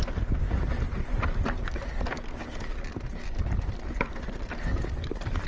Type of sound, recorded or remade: recorded